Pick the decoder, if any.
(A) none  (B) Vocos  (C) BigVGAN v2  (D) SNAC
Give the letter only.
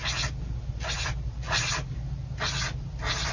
A